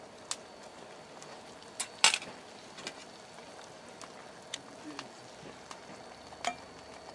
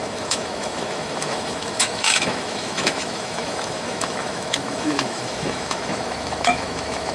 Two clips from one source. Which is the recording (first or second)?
first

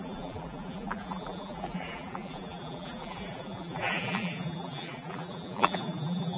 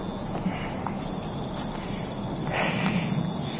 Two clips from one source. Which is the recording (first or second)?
second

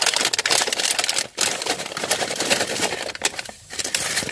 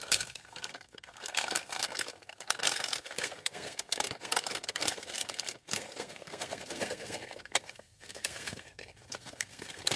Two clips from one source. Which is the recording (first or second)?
first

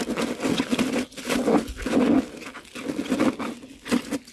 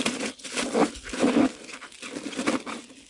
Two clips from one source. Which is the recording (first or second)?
first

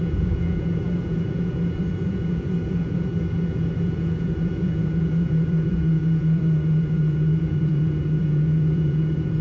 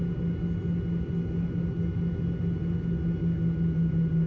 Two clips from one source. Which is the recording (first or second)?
second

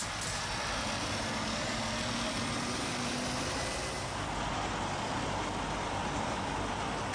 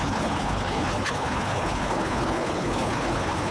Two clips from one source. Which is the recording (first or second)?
first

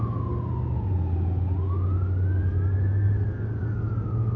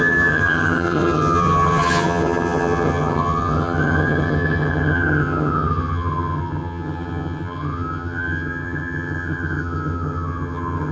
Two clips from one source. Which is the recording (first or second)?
first